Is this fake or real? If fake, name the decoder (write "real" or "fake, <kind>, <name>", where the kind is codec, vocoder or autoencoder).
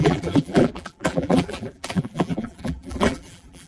fake, vocoder, BigVGAN v2